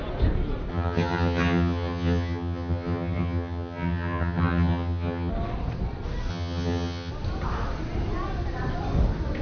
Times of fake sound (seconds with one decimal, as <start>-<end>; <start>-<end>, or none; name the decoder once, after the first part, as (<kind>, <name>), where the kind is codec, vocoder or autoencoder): 0.7-5.3 (vocoder, HiFi-GAN); 6.3-7.1